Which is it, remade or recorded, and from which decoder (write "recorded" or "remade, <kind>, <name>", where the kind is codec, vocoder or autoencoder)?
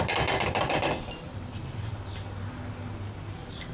recorded